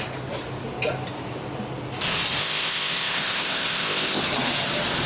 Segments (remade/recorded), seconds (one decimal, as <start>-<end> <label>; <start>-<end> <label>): 0.0-2.4 recorded; 2.4-4.2 remade; 4.2-5.1 recorded